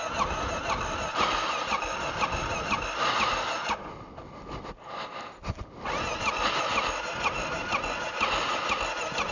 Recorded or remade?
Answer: recorded